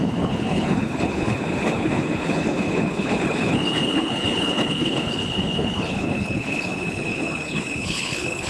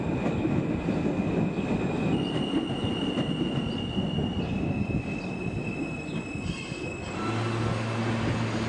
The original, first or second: second